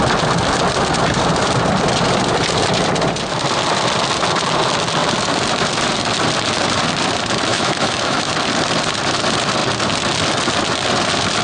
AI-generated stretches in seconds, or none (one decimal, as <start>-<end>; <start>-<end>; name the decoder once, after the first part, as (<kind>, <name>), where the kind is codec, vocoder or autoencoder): 7.5-8.3 (autoencoder, DAC-VAE)